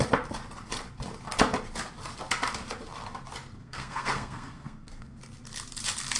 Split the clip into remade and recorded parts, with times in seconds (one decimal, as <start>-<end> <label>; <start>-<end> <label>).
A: 0.0-3.6 recorded; 3.6-5.2 remade; 5.2-6.2 recorded